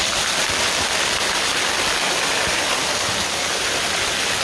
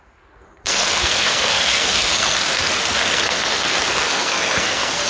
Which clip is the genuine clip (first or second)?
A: first